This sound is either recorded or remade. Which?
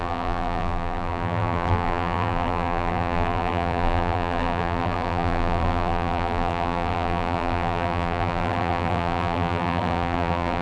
remade